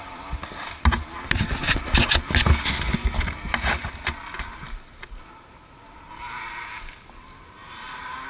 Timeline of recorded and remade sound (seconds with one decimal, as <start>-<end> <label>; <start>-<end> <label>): 0.0-8.3 recorded